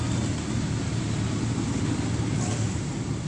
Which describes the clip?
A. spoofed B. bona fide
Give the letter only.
B